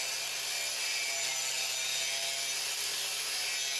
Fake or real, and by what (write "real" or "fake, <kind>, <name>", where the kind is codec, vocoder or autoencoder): real